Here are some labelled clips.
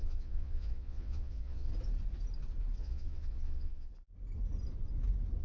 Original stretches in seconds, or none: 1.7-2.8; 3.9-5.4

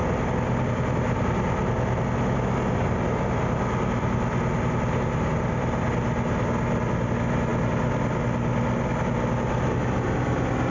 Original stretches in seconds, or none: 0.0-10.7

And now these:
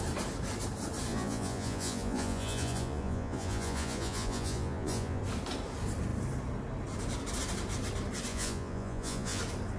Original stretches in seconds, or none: 0.0-1.1; 5.2-8.3; 9.4-9.8